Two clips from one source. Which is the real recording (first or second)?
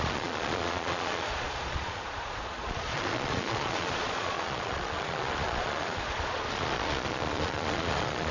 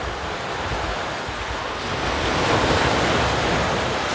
second